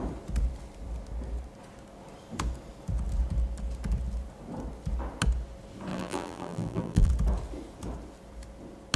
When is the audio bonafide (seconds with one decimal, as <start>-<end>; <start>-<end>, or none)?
0.0-5.9; 7.1-9.0